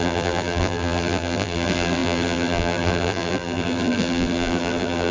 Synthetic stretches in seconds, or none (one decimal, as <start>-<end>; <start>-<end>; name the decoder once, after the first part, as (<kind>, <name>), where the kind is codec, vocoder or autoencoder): 0.0-5.1 (vocoder, BigVGAN v2)